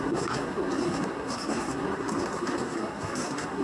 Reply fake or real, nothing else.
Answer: fake